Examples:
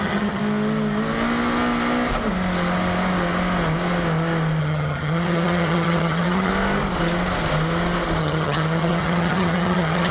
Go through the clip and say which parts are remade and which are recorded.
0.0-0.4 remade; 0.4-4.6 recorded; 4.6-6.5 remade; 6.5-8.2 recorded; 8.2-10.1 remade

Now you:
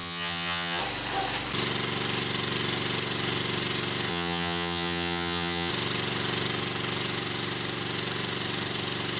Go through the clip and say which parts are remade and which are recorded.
0.0-0.8 remade; 0.8-4.1 recorded; 4.1-5.7 remade; 5.7-9.2 recorded

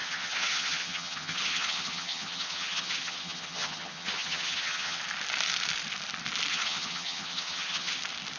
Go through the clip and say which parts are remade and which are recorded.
0.0-5.0 remade; 5.0-6.5 recorded; 6.5-8.0 remade; 8.0-8.4 recorded